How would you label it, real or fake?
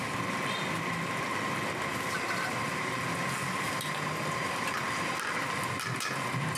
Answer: real